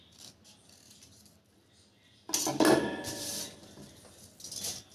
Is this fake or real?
real